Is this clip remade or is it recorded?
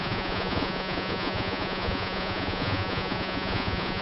remade